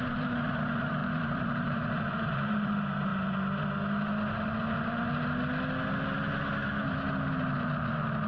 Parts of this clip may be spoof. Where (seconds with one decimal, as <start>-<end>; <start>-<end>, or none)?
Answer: 0.0-3.1